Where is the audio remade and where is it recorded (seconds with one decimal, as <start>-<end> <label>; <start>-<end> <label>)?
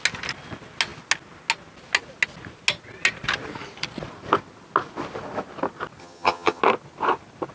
0.0-6.0 recorded; 6.0-6.6 remade; 6.6-7.5 recorded